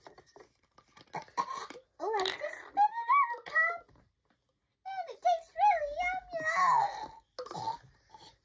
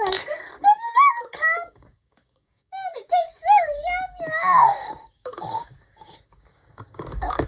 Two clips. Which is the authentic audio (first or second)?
first